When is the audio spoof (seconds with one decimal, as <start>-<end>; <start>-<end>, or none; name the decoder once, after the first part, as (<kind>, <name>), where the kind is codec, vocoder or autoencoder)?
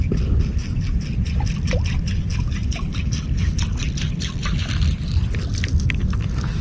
none